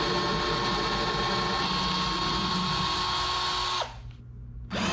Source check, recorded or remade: recorded